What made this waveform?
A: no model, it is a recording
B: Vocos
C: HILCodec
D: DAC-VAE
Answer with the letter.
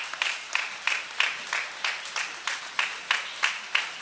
A